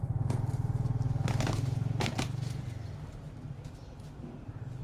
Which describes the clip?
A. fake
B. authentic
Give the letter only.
B